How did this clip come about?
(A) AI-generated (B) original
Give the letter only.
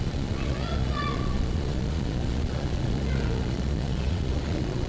A